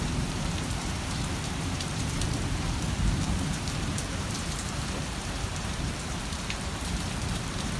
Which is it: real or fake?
fake